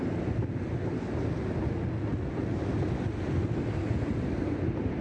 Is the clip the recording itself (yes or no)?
yes